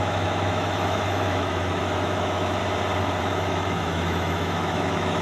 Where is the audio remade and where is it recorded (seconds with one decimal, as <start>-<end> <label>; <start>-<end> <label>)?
0.0-2.6 remade; 2.6-3.2 recorded; 3.2-5.2 remade